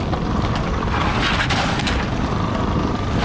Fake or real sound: real